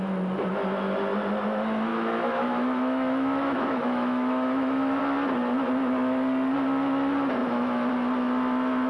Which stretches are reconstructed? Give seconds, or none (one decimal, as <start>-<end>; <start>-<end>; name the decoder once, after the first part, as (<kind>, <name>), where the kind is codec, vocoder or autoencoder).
1.9-5.0 (autoencoder, DAC-VAE); 7.4-7.9